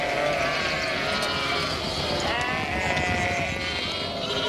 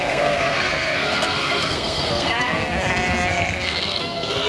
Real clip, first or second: first